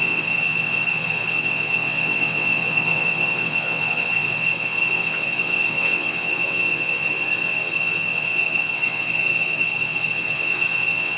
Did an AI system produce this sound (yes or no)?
yes